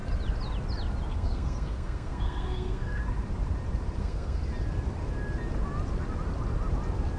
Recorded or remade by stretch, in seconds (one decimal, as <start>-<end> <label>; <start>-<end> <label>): 0.0-1.1 recorded; 1.1-3.0 remade; 3.0-4.0 recorded; 4.0-4.4 remade; 4.4-7.2 recorded